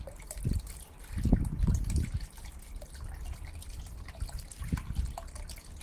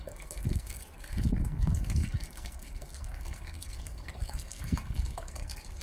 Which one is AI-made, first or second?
second